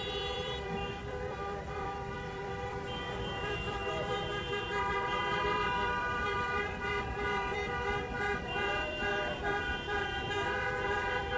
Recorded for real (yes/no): no